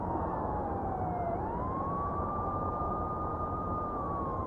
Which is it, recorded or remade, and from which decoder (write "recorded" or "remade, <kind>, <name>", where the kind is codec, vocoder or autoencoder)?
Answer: remade, vocoder, BigVGAN v2